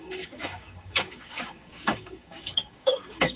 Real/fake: fake